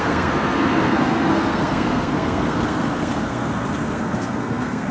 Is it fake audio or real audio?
fake